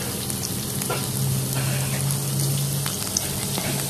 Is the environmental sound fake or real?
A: fake